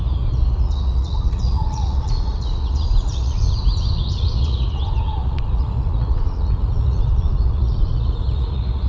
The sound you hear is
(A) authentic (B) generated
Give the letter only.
B